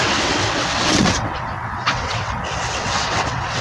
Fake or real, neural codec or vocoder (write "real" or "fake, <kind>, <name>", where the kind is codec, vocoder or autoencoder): fake, vocoder, WaveNeXt